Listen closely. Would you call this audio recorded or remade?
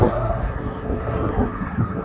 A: remade